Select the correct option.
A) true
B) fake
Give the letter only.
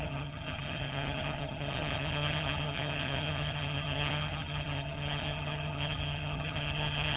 B